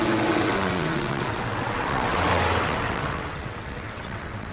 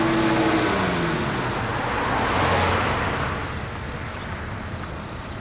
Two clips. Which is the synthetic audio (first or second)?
first